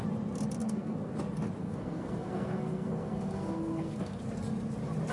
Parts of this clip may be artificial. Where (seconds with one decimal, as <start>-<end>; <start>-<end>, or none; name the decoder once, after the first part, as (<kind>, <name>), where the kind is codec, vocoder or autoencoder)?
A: 0.6-1.2 (codec, SNAC); 1.6-4.2